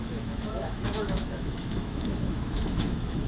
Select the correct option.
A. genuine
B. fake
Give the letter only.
B